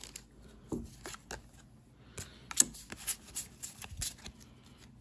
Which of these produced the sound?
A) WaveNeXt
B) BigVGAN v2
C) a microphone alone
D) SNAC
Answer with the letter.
C